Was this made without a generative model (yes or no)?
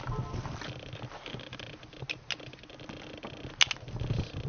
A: yes